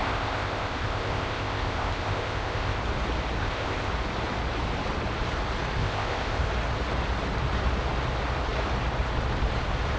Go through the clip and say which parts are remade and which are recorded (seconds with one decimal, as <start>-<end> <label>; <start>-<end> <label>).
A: 0.0-2.8 remade; 2.8-3.4 recorded; 3.4-3.9 remade; 3.9-5.8 recorded; 5.8-6.5 remade; 6.5-10.0 recorded

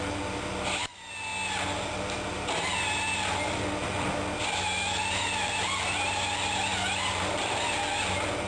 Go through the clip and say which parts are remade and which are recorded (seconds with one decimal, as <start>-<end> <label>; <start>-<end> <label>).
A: 0.0-1.3 remade; 1.3-5.1 recorded; 5.1-6.7 remade; 6.7-7.2 recorded; 7.2-8.5 remade

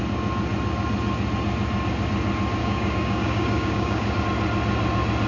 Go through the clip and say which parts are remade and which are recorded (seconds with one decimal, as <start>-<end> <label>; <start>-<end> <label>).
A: 0.0-2.6 recorded; 2.6-4.2 remade; 4.2-5.3 recorded

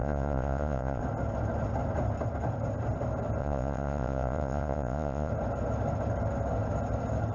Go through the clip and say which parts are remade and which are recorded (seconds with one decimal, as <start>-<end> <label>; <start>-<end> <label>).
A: 0.0-1.0 remade; 1.0-3.4 recorded; 3.4-5.3 remade; 5.3-7.3 recorded

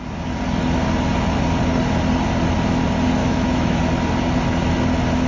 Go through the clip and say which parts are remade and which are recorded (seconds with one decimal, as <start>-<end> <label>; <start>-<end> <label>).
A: 0.0-3.2 recorded; 3.2-3.8 remade; 3.8-5.3 recorded

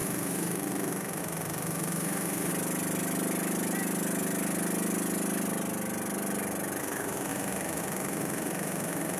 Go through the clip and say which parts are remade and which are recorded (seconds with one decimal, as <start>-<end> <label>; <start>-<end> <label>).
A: 0.0-2.5 remade; 2.5-6.8 recorded; 6.8-9.2 remade

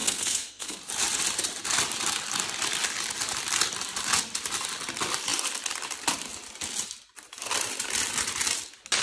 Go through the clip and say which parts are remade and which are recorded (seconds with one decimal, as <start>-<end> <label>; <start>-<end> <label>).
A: 0.0-0.8 remade; 0.8-9.0 recorded

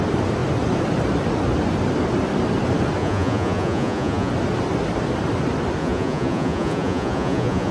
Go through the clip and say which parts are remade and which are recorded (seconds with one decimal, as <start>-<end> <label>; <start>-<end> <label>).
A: 0.0-3.0 recorded; 3.0-4.3 remade; 4.3-5.8 recorded; 5.8-7.7 remade